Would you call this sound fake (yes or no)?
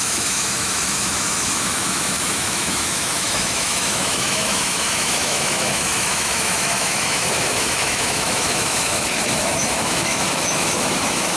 yes